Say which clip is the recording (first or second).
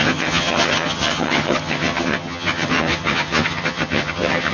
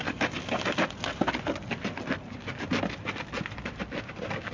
second